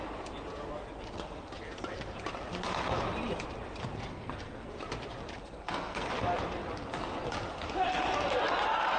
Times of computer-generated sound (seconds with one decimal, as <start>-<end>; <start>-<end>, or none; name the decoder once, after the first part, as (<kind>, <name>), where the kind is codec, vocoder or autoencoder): 4.1-4.7 (codec, SNAC); 5.4-6.1